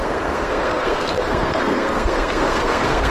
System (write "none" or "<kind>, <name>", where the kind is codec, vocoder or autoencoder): codec, SNAC